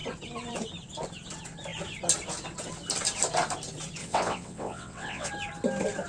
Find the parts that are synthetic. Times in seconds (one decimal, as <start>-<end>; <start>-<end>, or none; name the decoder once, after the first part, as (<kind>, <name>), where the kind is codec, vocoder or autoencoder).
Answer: 4.0-5.3 (vocoder, WaveNeXt)